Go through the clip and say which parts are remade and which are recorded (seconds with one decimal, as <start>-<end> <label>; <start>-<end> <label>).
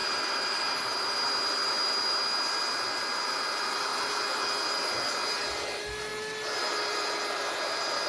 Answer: 0.0-1.0 remade; 1.0-8.1 recorded